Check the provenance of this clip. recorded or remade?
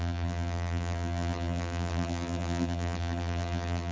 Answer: remade